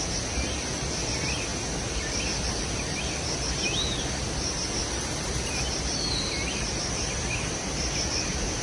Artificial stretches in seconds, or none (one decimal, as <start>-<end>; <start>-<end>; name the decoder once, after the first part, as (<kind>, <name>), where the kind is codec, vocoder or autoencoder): none